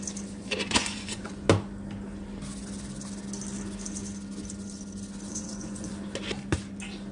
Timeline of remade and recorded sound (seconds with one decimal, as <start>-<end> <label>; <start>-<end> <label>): 0.0-0.4 recorded; 0.4-1.3 remade; 1.3-5.3 recorded; 5.3-5.9 remade; 5.9-7.1 recorded